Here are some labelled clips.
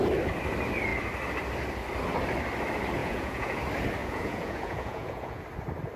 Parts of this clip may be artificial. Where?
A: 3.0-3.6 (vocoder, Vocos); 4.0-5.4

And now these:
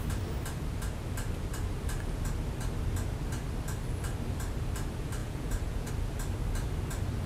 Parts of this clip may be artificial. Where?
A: 5.2-5.9 (vocoder, Vocos)

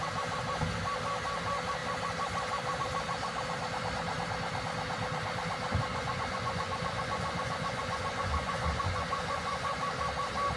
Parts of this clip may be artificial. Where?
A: 5.9-9.8 (vocoder, Vocos)

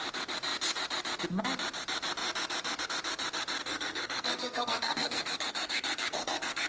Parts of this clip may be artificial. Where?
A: 3.6-6.7 (codec, SNAC)

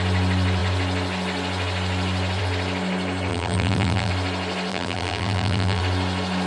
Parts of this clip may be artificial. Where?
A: 3.3-4.1 (vocoder, BigVGAN v2); 4.7-5.8

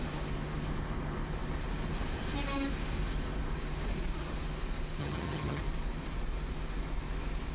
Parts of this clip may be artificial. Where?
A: 5.0-5.6 (vocoder, HiFi-GAN)

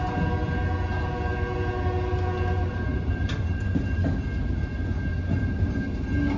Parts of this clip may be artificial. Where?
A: 2.9-4.0 (vocoder, BigVGAN v2)